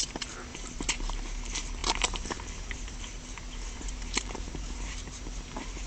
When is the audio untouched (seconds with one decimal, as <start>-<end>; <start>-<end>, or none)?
0.0-0.5; 1.2-1.8; 5.1-5.9

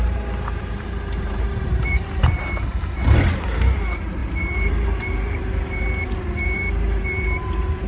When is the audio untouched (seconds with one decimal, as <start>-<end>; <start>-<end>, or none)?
none

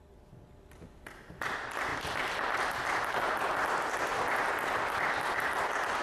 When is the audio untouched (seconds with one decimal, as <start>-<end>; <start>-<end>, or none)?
1.9-3.6; 4.1-6.0

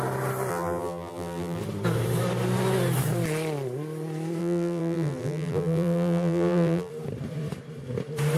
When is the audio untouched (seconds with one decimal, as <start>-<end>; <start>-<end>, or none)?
0.0-0.5; 1.6-4.4; 6.9-8.4

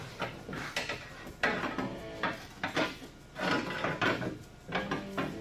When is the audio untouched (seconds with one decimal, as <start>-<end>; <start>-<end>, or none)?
1.3-1.9; 3.1-5.4